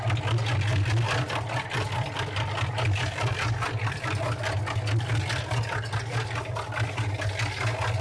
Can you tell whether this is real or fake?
real